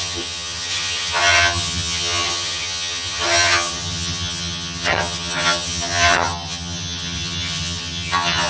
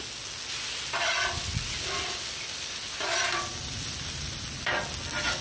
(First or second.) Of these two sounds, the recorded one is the second